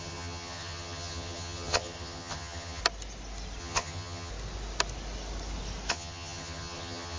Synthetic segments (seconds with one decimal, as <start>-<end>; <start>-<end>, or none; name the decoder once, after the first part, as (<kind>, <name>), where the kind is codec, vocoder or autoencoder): 0.0-2.8 (vocoder, HiFi-GAN); 3.6-4.3; 5.9-7.2